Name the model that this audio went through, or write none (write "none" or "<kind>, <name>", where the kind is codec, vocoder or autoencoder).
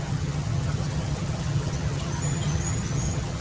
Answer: vocoder, HiFi-GAN